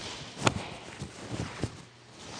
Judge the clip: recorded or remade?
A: recorded